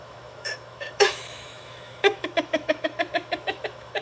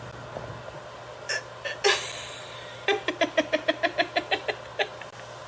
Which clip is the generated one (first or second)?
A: first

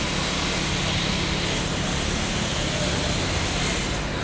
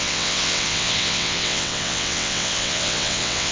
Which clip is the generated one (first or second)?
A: second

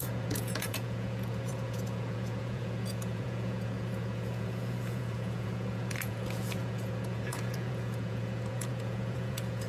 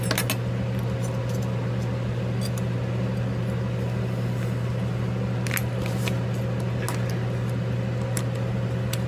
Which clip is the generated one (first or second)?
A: first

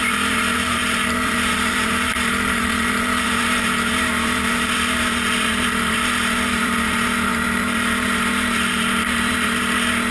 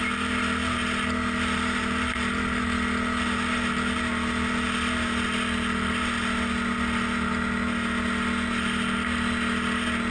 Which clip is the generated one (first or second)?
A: first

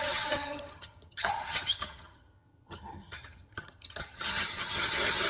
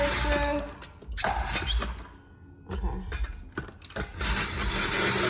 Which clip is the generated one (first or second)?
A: first